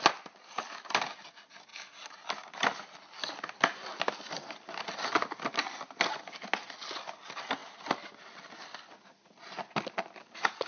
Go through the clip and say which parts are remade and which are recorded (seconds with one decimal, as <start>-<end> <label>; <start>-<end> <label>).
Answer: 0.0-10.7 recorded